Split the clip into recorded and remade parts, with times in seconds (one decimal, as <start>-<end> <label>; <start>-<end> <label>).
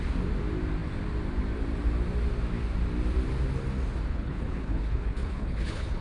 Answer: 0.0-4.1 recorded; 4.1-6.0 remade